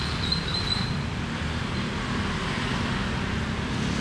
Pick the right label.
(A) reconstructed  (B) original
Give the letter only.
B